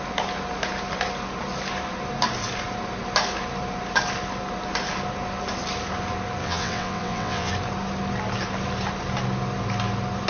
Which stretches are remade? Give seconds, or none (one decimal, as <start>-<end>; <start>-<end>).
6.4-7.5